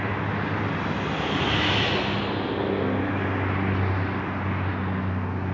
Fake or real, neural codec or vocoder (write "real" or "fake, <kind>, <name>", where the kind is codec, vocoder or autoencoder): real